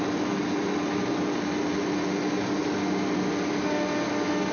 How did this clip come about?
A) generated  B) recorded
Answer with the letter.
B